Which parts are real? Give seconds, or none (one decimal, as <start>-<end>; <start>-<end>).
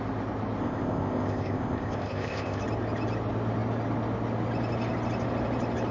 0.0-0.6; 2.6-5.9